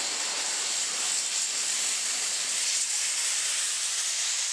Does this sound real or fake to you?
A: real